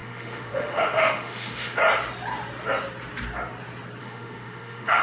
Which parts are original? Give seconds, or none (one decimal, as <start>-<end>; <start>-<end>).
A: 1.8-4.0